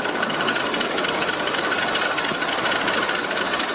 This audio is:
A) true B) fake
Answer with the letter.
A